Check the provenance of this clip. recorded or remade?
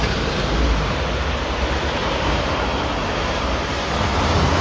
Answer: remade